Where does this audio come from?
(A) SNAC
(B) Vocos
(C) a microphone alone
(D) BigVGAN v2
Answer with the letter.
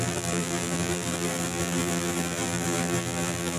D